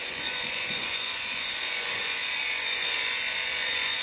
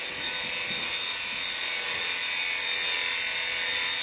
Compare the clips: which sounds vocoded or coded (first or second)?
first